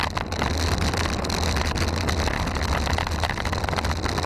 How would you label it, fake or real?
real